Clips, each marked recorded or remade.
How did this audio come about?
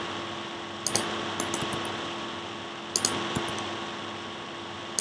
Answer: recorded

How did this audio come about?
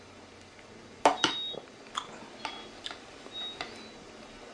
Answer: recorded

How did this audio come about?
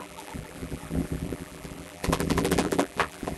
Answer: remade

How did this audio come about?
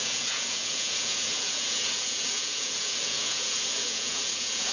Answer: remade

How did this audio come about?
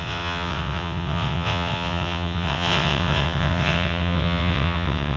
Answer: remade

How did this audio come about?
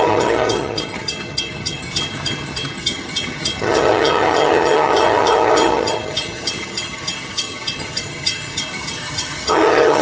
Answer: remade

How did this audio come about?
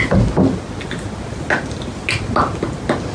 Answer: recorded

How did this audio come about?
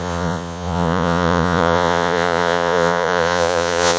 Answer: remade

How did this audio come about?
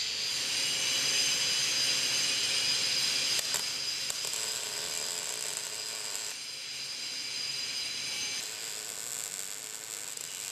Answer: recorded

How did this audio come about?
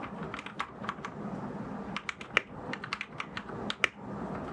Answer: recorded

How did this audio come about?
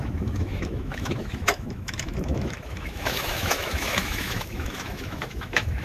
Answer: remade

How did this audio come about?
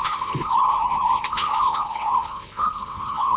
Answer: remade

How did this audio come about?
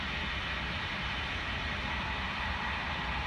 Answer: recorded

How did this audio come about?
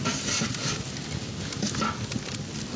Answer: recorded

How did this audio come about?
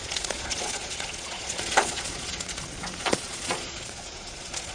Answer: remade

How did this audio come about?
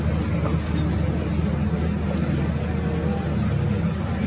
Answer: recorded